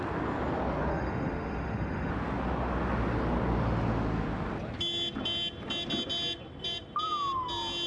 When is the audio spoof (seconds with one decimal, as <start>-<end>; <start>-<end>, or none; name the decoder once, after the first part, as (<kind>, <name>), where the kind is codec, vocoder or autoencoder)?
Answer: 0.9-2.1 (autoencoder, DAC-VAE)